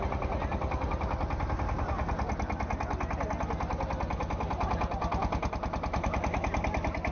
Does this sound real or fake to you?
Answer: real